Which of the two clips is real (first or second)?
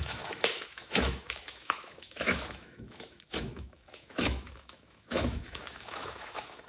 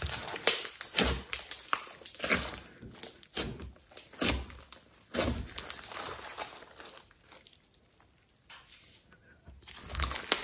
second